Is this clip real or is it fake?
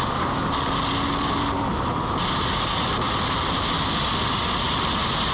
real